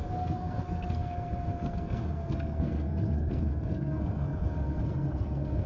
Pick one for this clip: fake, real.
fake